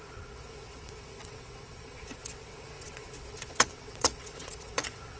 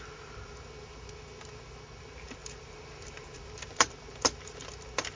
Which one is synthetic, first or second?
first